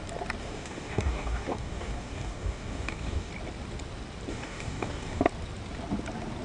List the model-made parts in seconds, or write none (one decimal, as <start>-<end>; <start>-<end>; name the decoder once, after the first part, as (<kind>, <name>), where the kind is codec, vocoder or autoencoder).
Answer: 0.4-3.3 (codec, DAC); 4.3-5.2